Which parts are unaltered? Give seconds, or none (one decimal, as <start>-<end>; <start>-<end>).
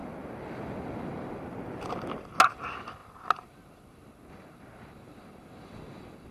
0.0-6.3